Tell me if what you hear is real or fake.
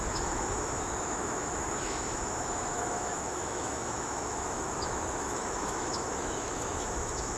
fake